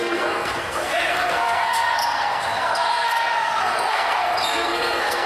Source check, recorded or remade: remade